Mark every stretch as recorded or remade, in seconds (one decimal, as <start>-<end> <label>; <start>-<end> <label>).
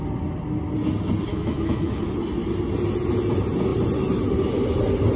0.0-1.3 recorded; 1.3-2.0 remade; 2.0-5.2 recorded